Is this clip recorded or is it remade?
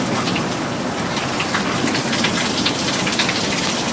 recorded